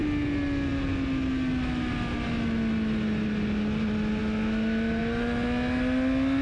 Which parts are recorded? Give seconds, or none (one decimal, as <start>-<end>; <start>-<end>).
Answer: 0.0-6.4

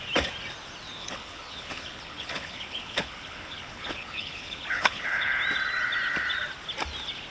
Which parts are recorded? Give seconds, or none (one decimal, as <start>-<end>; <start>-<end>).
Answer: 0.0-1.0; 5.4-7.3

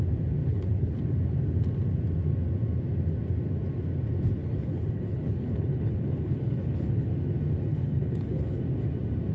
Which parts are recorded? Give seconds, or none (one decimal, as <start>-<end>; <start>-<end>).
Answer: 0.0-0.4; 1.0-4.4; 7.1-7.7; 8.6-9.3

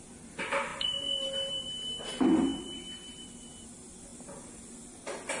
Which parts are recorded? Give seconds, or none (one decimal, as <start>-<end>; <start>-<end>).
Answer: 0.0-5.4